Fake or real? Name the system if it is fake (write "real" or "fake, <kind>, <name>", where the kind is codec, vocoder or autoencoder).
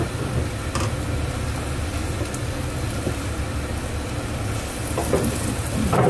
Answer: real